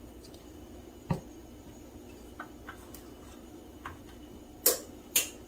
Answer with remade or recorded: recorded